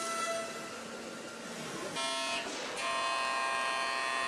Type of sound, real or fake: real